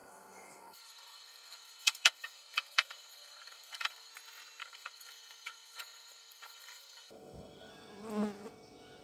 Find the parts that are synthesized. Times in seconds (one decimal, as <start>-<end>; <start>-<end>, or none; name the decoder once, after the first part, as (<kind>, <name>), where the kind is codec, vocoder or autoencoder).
0.0-4.1 (codec, SNAC); 4.6-7.7